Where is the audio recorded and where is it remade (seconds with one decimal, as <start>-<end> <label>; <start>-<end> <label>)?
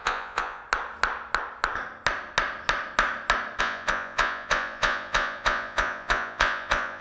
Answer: 0.0-0.6 remade; 0.6-3.6 recorded; 3.6-7.0 remade